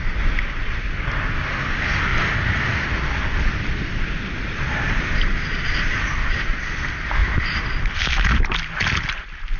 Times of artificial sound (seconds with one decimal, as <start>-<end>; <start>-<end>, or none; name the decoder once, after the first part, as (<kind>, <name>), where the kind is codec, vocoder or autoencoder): none